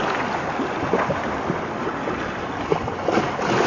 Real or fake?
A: real